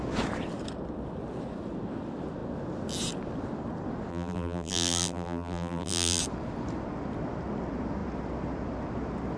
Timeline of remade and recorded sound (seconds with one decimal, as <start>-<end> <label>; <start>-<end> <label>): 0.0-4.1 recorded; 4.1-6.2 remade; 6.2-9.4 recorded